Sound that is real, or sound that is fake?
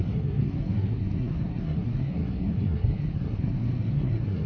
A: fake